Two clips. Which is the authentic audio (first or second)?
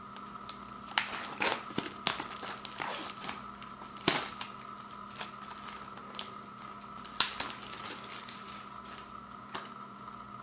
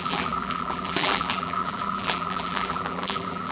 first